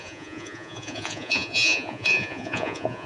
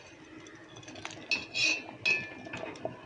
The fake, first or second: first